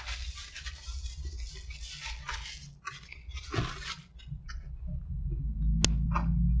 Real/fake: real